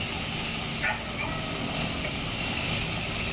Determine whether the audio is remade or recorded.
recorded